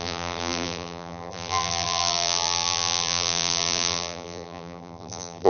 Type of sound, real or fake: fake